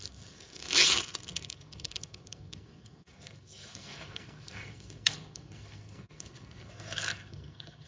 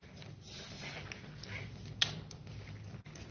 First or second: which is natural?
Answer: second